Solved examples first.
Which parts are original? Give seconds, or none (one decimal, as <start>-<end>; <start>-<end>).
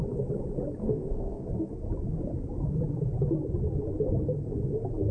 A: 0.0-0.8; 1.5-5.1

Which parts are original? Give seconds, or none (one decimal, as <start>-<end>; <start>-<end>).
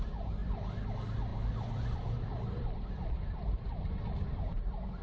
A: 0.0-1.3; 4.3-5.0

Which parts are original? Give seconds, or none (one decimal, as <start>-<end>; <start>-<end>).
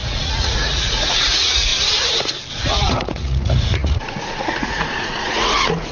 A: 1.7-2.5